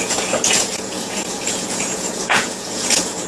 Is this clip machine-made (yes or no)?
yes